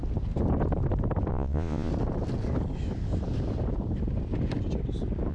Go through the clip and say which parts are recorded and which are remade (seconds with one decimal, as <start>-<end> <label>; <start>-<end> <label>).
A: 0.0-1.3 recorded; 1.3-1.9 remade; 1.9-5.3 recorded